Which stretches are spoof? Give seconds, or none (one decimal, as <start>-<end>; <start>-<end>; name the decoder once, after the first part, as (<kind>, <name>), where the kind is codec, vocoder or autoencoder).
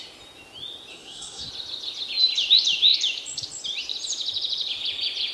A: 0.9-1.5 (codec, SNAC)